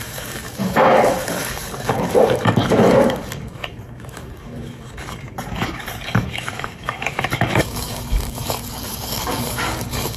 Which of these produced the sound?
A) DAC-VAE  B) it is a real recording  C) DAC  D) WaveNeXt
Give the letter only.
C